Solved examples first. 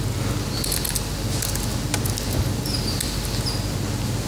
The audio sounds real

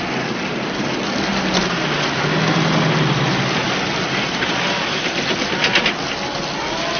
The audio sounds real